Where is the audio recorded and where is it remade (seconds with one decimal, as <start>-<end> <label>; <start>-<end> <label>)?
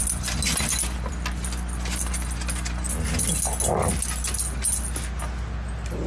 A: 0.0-6.1 recorded